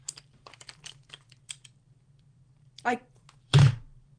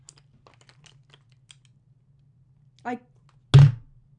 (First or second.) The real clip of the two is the second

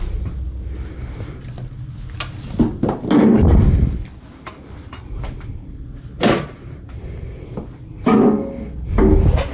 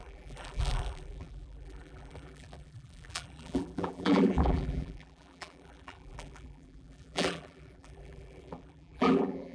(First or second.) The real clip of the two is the first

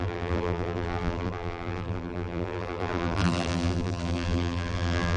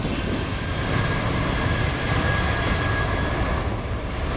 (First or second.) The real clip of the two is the second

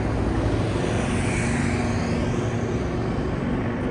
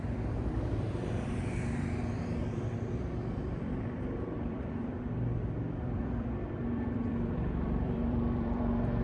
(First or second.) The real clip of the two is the first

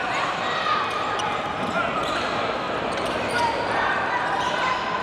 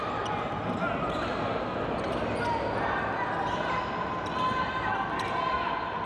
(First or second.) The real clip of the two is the second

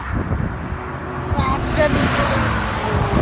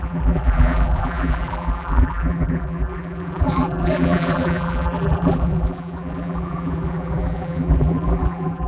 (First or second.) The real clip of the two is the first